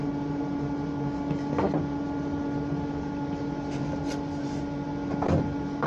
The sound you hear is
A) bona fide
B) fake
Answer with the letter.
A